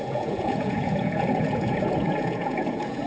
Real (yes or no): no